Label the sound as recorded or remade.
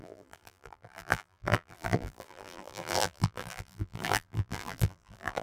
remade